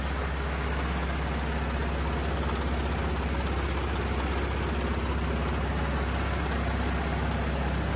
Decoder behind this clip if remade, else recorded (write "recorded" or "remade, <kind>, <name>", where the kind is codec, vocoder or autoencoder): recorded